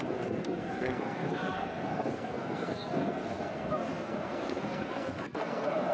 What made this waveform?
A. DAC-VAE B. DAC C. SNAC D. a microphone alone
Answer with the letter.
C